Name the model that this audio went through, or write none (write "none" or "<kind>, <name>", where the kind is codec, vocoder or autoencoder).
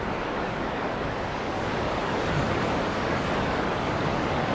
codec, DAC